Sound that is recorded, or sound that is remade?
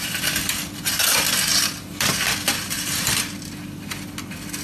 recorded